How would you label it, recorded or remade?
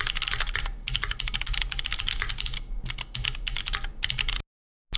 recorded